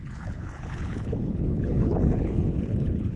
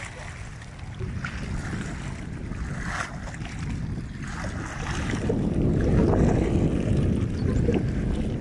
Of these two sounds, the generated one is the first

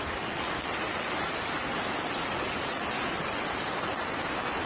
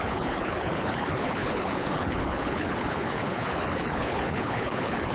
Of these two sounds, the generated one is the second